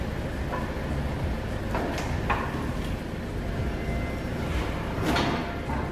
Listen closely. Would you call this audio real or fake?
real